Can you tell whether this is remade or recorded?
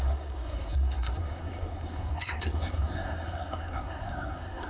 remade